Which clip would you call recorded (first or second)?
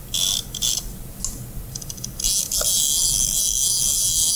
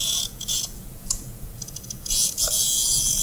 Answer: first